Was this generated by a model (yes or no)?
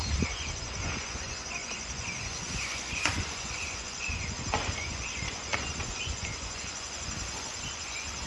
yes